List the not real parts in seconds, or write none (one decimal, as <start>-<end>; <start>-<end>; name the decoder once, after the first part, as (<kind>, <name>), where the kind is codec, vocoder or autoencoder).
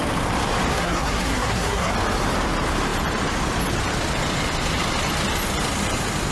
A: 0.7-1.9 (codec, SNAC)